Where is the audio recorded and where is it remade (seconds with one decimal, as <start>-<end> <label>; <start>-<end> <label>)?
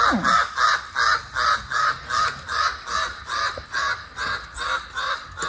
0.0-5.5 recorded